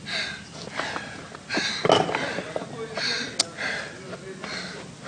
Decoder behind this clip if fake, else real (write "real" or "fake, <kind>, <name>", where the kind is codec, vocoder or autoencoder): real